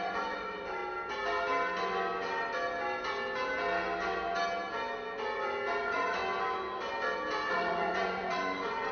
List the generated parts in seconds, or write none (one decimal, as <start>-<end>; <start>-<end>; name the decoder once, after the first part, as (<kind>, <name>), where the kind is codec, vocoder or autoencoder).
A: 0.0-0.8 (vocoder, Vocos); 5.8-6.2; 7.5-8.9